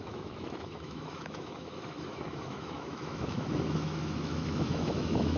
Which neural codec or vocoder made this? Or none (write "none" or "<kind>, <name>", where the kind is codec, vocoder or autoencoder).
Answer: autoencoder, DAC-VAE